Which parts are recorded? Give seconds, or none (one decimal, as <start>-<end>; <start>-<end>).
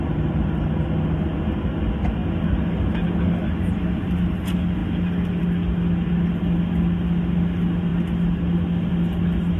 0.0-9.6